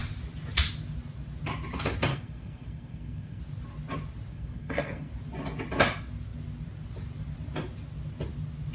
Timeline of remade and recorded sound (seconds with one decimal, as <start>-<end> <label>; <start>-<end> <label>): 0.0-2.1 recorded; 2.1-3.4 remade; 3.4-4.3 recorded; 4.3-5.1 remade; 5.1-8.7 recorded